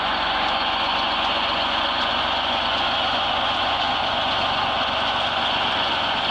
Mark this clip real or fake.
fake